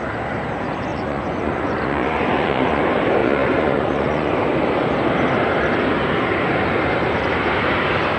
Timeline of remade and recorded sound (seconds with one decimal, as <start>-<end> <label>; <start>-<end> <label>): 0.0-0.9 recorded; 0.9-2.8 remade; 2.8-3.2 recorded; 3.2-4.3 remade; 4.3-8.2 recorded